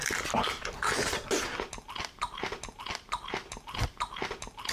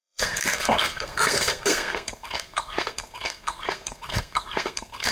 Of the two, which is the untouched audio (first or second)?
first